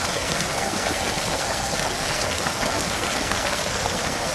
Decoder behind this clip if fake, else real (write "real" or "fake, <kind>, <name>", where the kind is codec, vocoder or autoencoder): fake, codec, SNAC